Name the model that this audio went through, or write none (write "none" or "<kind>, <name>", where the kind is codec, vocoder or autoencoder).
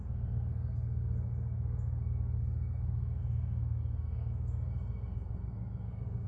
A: codec, SNAC